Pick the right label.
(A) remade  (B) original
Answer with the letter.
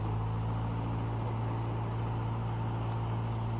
B